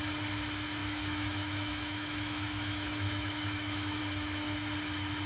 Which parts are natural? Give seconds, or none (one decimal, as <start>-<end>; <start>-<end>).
0.0-0.8; 4.0-5.3